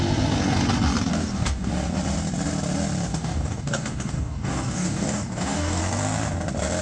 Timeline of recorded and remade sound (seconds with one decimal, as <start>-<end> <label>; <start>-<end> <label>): 0.0-1.1 recorded; 1.1-1.7 remade; 1.7-3.1 recorded; 3.1-5.8 remade; 5.8-6.8 recorded